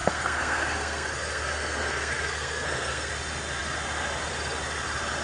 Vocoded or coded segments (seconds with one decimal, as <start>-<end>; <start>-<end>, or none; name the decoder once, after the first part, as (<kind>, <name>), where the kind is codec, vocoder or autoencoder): 0.0-3.1 (codec, SNAC)